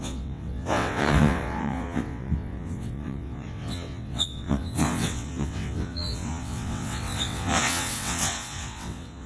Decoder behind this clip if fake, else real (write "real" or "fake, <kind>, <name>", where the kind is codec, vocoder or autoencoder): fake, vocoder, WaveNeXt